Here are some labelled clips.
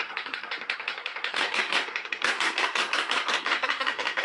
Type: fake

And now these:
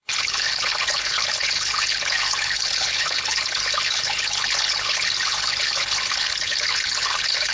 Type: fake